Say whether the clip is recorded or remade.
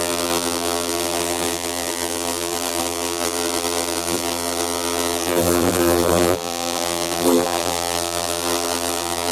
remade